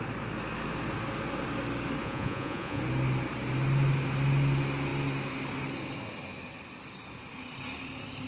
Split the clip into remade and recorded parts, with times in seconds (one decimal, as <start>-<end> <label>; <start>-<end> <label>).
0.0-2.0 recorded; 2.0-2.8 remade; 2.8-8.3 recorded